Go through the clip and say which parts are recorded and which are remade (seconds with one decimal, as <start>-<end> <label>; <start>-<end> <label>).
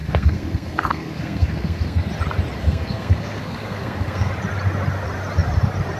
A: 0.0-2.1 remade; 2.1-2.6 recorded; 2.6-4.3 remade; 4.3-6.0 recorded